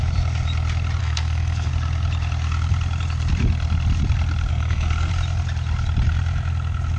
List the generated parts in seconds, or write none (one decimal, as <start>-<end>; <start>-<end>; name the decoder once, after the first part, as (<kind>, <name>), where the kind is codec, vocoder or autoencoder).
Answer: 1.0-1.7 (codec, SNAC); 4.5-5.1